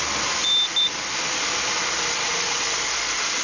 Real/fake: real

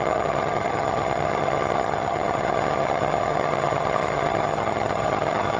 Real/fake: fake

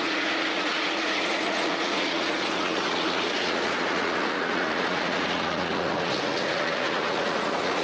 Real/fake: fake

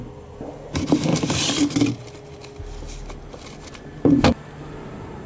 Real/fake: real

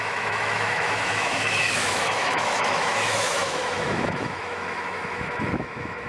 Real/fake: fake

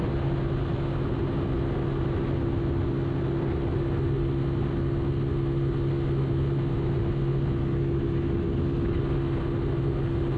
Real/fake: real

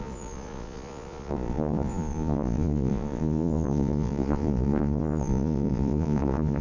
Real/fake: fake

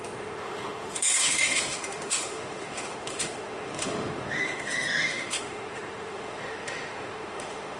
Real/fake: fake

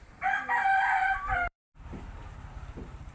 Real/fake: fake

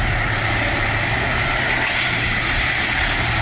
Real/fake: fake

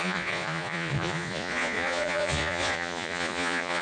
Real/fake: fake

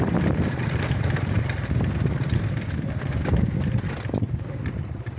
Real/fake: fake